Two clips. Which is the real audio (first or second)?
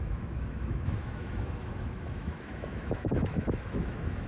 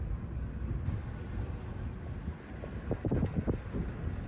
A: second